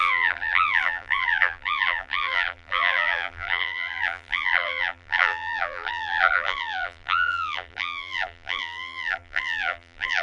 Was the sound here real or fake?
fake